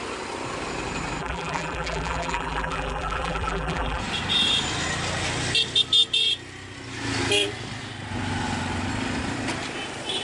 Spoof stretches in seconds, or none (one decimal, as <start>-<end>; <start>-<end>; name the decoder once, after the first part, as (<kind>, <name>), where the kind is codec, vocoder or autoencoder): 1.2-4.0 (vocoder, BigVGAN v2)